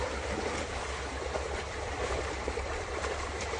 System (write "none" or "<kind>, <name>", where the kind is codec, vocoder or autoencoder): vocoder, BigVGAN v2